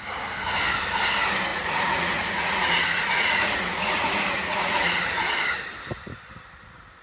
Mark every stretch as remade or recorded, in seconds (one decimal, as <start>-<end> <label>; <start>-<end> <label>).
0.0-1.5 recorded; 1.5-5.0 remade; 5.0-7.0 recorded